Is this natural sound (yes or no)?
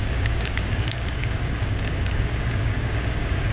no